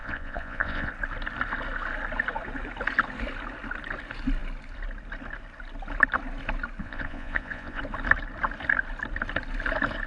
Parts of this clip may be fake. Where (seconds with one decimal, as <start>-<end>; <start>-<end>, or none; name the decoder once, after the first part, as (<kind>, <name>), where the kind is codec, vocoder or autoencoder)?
0.0-0.9 (vocoder, Vocos); 6.8-7.8